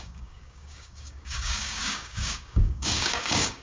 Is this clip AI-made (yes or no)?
yes